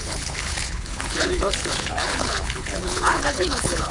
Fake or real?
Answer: fake